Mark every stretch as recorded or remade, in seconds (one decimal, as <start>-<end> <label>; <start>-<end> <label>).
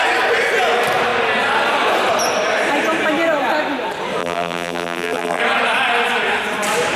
0.0-4.2 recorded; 4.2-5.4 remade; 5.4-7.0 recorded